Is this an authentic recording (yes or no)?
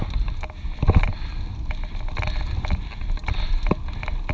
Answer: yes